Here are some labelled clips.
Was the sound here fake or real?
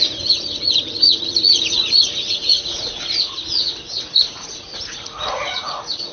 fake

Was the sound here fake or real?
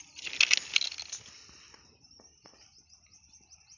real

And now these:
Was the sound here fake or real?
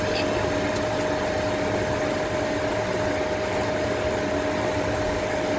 real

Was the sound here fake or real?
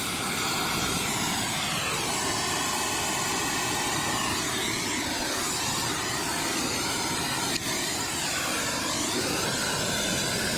fake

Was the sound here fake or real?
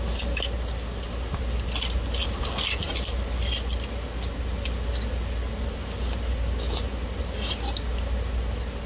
real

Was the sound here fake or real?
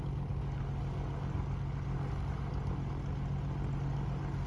real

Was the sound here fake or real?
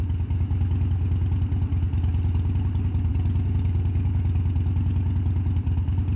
real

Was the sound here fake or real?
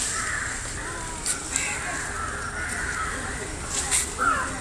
real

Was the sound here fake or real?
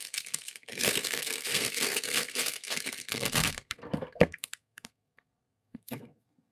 fake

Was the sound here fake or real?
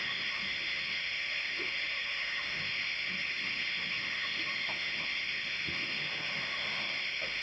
fake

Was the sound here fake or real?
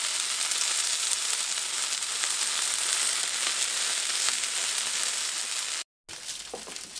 real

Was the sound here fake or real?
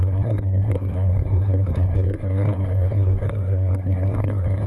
fake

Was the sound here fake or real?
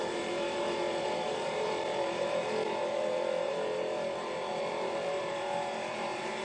fake